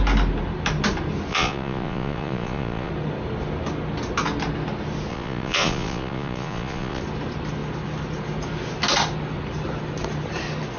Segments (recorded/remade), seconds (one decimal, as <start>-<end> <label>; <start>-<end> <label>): 0.0-1.3 recorded; 1.3-2.9 remade; 2.9-5.1 recorded; 5.1-7.0 remade; 7.0-10.8 recorded

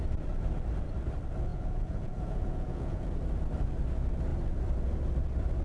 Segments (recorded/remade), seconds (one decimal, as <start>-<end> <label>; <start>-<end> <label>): 0.0-1.5 recorded; 1.5-3.1 remade; 3.1-5.6 recorded

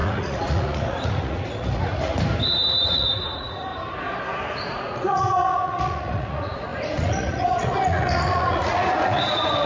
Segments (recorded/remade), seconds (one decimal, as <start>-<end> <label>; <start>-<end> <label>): 0.0-2.1 remade; 2.1-2.8 recorded; 2.8-3.7 remade; 3.7-4.5 recorded; 4.5-9.7 remade